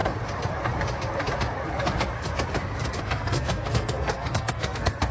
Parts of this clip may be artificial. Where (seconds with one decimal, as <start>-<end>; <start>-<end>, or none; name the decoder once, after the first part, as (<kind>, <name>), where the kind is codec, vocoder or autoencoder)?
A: 3.0-5.1 (codec, SNAC)